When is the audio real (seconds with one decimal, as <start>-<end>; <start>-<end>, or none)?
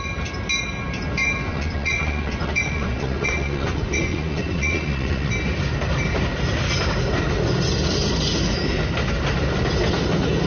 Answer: 0.0-1.5; 5.3-10.5